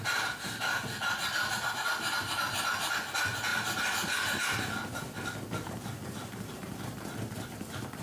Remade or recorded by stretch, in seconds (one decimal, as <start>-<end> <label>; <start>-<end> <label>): 0.0-8.0 recorded